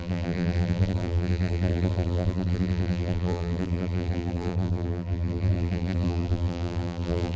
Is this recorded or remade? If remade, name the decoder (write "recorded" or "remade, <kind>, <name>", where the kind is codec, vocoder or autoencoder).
remade, vocoder, BigVGAN v2